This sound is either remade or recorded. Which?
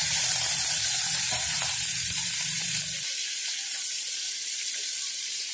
remade